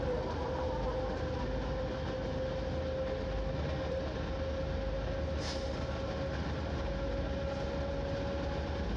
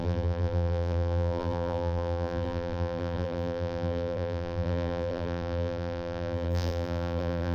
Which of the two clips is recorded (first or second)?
first